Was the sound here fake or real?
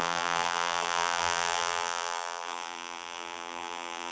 fake